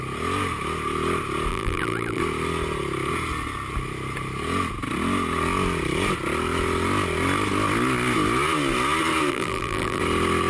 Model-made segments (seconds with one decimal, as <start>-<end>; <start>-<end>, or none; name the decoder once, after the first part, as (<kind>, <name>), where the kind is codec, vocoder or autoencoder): 1.5-2.2 (vocoder, BigVGAN v2); 9.3-10.0